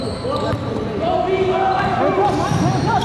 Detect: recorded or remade recorded